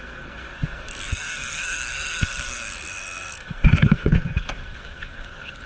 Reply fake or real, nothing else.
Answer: fake